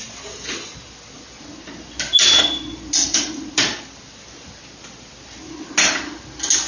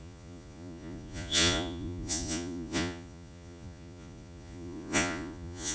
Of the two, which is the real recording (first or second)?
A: first